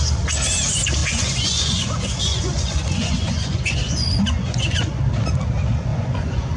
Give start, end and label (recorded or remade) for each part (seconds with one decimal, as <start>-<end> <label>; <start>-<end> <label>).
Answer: 0.0-1.0 recorded; 1.0-5.0 remade; 5.0-5.9 recorded; 5.9-6.6 remade